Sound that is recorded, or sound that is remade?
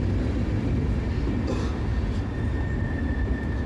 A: recorded